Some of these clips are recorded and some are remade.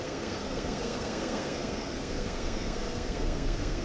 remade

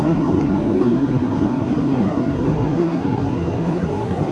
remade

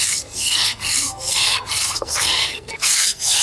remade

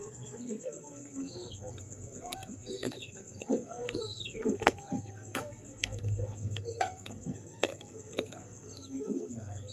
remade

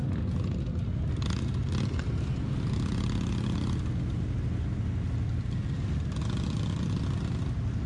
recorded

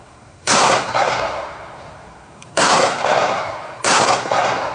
remade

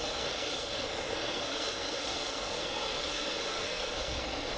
remade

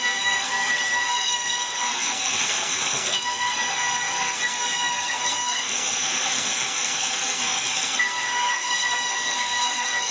remade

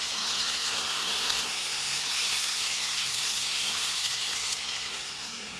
remade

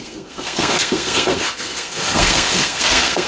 remade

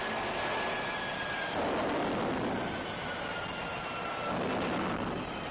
recorded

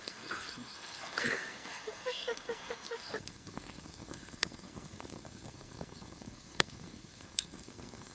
remade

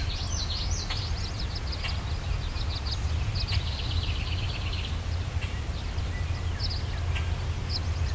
recorded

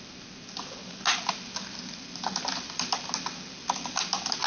recorded